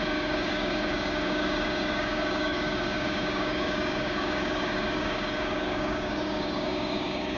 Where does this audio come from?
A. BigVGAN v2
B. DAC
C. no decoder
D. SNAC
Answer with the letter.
B